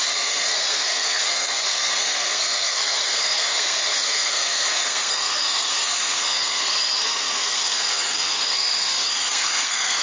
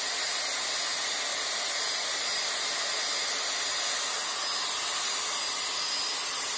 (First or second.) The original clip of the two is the second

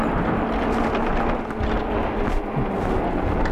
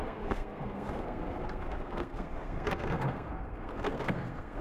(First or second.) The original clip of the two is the first